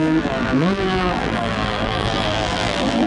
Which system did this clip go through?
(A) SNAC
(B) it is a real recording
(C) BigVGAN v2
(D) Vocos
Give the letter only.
C